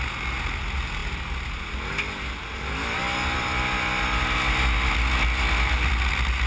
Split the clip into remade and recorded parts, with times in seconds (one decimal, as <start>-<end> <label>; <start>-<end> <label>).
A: 0.0-6.5 recorded